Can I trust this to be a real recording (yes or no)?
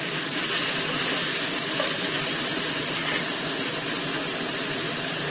no